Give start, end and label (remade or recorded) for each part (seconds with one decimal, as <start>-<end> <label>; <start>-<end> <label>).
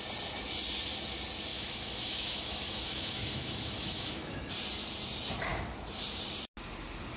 0.0-1.5 recorded; 1.5-4.5 remade; 4.5-7.2 recorded